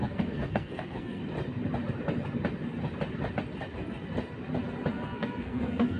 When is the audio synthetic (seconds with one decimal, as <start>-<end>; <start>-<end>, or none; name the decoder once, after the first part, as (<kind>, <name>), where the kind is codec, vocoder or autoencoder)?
0.0-1.2 (codec, SNAC); 4.8-6.0

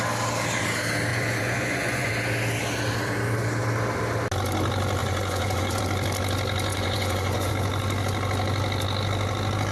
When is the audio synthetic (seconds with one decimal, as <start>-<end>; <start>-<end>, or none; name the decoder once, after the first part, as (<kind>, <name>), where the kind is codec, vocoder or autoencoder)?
1.1-2.1 (vocoder, Vocos); 5.0-5.8; 6.7-7.5

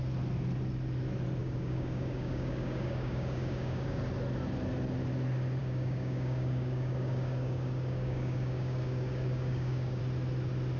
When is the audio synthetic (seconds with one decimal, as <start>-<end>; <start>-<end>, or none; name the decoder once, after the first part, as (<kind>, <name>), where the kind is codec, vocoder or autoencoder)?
1.4-4.0 (codec, DAC); 5.6-10.0

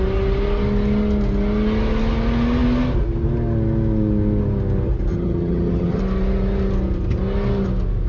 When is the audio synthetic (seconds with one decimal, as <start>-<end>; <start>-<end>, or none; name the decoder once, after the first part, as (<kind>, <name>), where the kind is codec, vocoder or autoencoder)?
5.1-6.0 (vocoder, HiFi-GAN)

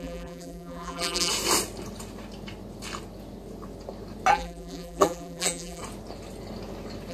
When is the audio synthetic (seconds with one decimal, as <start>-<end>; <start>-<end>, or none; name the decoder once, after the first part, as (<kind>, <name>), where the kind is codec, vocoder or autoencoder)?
0.0-1.3 (vocoder, BigVGAN v2); 4.3-5.8

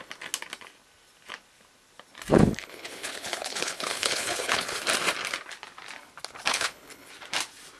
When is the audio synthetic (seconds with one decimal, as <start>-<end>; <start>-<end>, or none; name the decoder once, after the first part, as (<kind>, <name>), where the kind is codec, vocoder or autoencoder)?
2.3-4.8 (codec, HILCodec); 6.5-7.1